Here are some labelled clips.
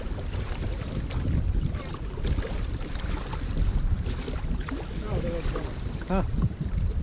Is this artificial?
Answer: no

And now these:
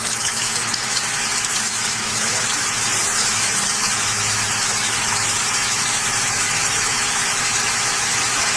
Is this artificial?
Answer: yes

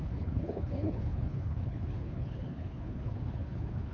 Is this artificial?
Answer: yes